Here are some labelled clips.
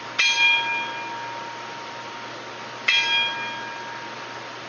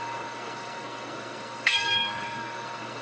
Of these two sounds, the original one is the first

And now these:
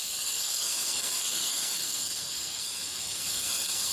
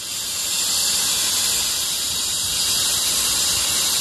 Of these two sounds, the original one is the second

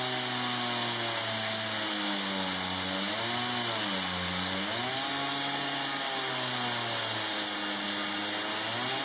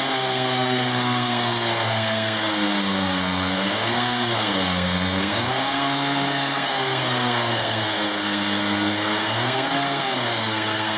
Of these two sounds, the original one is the first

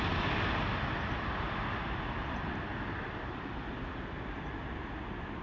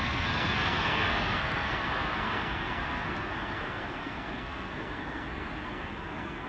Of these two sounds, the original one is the first